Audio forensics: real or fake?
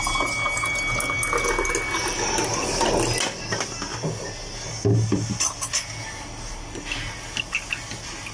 real